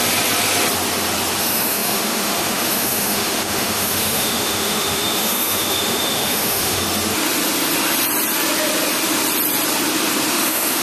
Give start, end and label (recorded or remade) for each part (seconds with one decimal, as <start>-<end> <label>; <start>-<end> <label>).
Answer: 0.0-1.4 recorded; 1.4-6.8 remade; 6.8-10.3 recorded; 10.3-10.8 remade